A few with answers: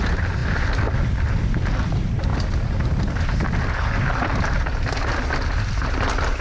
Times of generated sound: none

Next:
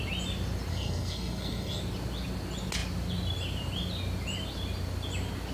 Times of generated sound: 0.7-1.8 (codec, SNAC)

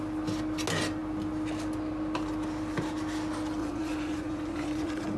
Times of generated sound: 3.6-5.2 (vocoder, Vocos)

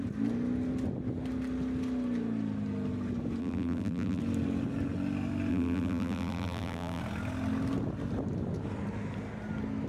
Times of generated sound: 3.4-4.2 (vocoder, BigVGAN v2); 5.5-7.0

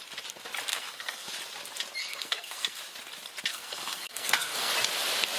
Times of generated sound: 0.7-1.3 (codec, SNAC); 2.0-2.8; 3.5-4.7